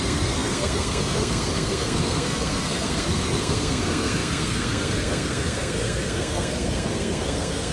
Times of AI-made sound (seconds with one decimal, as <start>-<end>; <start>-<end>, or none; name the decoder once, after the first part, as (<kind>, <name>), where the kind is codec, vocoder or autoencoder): 0.0-7.7 (codec, SNAC)